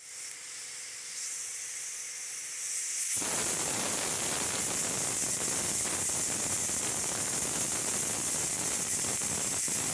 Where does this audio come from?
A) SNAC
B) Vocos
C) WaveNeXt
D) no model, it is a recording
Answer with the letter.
D